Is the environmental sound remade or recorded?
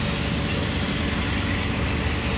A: recorded